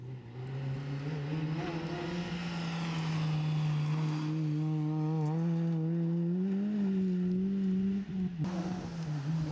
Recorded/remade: recorded